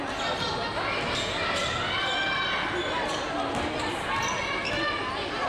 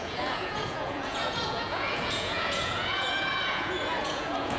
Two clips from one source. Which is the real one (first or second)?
first